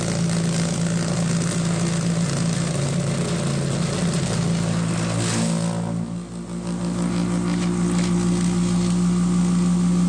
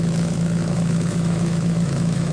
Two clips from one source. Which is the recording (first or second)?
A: first